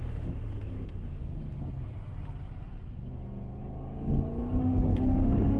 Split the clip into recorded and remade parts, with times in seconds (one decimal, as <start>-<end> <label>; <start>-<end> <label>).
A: 0.0-1.2 remade; 1.2-4.6 recorded; 4.6-5.6 remade